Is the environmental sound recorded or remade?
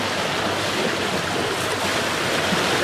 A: recorded